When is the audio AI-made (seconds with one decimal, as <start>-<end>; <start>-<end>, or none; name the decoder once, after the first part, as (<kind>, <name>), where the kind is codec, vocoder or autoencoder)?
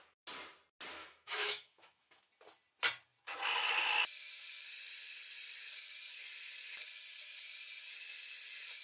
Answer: 1.0-2.2 (autoencoder, DAC-VAE)